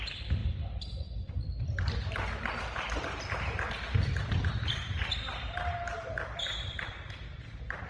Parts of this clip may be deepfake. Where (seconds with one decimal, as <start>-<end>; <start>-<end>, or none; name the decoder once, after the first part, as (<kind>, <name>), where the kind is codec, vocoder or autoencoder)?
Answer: none